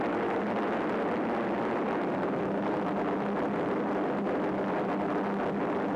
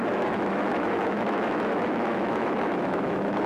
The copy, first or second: second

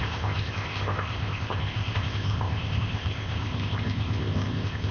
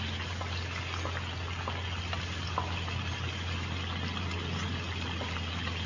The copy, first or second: first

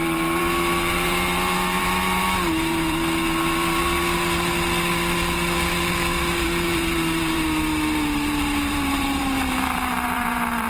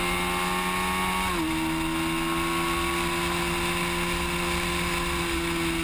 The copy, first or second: first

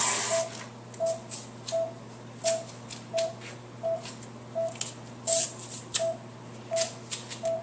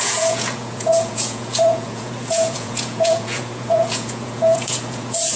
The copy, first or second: second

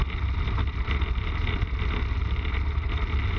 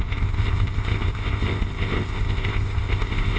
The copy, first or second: second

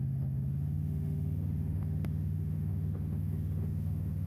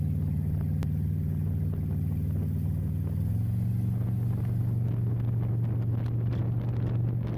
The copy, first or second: first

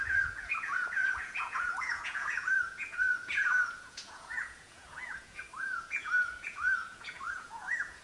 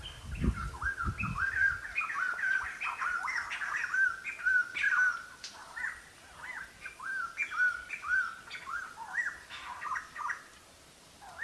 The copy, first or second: first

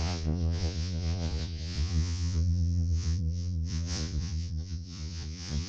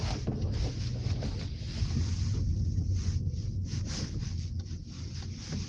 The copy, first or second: first